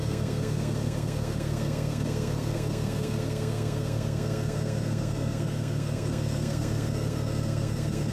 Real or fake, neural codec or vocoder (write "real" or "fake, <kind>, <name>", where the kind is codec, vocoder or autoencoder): fake, codec, SNAC